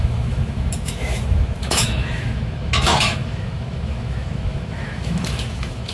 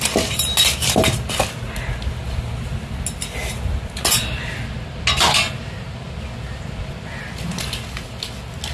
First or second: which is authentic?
second